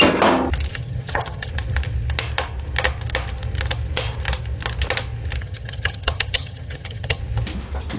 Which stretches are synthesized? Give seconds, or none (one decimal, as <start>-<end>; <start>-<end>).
0.7-1.5; 5.4-7.2